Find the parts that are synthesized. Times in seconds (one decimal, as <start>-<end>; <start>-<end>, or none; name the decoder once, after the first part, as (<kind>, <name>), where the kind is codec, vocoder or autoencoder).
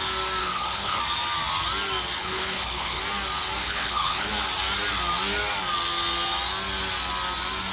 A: 0.4-1.0 (codec, HILCodec); 2.2-3.0; 3.6-4.3